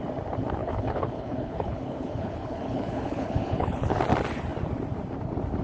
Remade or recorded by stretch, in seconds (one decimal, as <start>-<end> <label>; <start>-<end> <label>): 0.0-0.6 recorded; 0.6-4.0 remade; 4.0-5.6 recorded